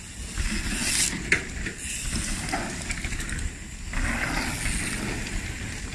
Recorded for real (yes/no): yes